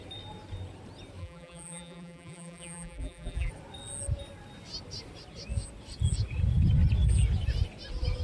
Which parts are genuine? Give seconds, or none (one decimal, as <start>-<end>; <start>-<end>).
0.0-1.2; 3.5-8.2